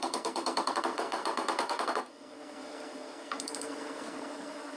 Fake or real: fake